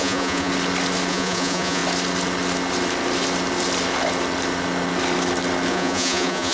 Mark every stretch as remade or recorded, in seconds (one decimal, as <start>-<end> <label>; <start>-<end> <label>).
0.0-0.5 remade; 0.5-1.1 recorded; 1.1-1.8 remade; 1.8-5.7 recorded; 5.7-6.5 remade